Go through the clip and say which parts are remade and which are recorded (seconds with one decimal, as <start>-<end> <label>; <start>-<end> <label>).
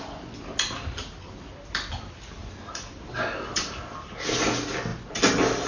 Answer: 0.0-5.7 recorded